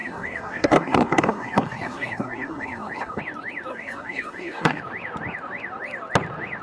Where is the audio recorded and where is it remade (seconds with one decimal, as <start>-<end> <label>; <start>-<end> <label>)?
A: 0.0-3.2 remade; 3.2-3.7 recorded; 3.7-4.8 remade; 4.8-6.6 recorded